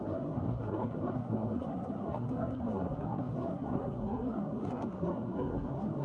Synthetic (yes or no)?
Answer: yes